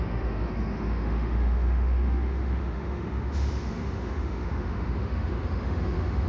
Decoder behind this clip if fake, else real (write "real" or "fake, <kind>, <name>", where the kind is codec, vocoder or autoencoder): fake, autoencoder, DAC-VAE